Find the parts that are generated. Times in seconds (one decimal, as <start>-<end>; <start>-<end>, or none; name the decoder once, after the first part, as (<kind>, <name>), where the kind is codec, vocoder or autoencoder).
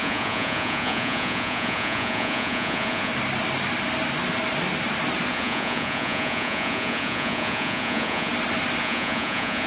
0.0-3.1 (vocoder, Vocos); 5.3-8.3; 8.8-9.7